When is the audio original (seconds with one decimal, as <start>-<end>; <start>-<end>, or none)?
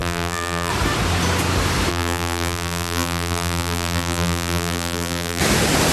0.7-1.9; 5.4-5.9